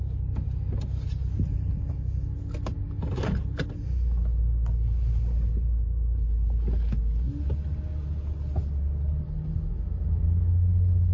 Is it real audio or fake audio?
real